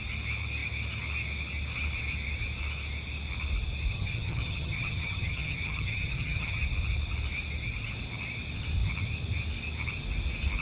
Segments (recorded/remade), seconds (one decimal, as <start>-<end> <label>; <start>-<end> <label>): 0.0-3.9 recorded; 3.9-6.6 remade; 6.6-10.6 recorded